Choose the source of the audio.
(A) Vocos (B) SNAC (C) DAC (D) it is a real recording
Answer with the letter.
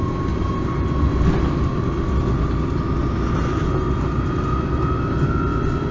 D